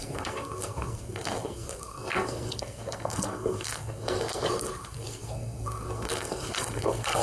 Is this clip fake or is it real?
fake